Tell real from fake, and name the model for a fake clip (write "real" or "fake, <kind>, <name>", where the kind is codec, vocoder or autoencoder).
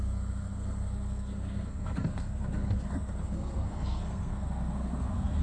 fake, codec, SNAC